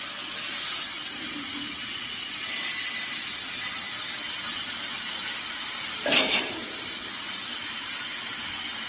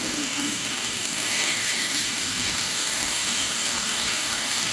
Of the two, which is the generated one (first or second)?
second